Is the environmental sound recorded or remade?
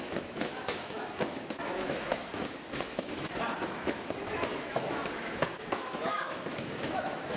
remade